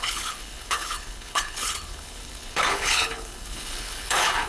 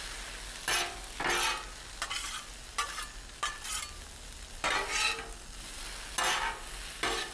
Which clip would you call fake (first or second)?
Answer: first